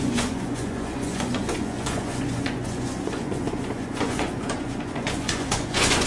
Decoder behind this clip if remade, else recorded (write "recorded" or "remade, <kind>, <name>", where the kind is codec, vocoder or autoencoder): remade, vocoder, Vocos